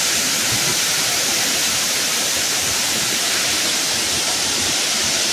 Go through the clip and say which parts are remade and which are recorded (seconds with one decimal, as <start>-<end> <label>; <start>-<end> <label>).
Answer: 0.0-0.7 recorded; 0.7-3.9 remade; 3.9-5.3 recorded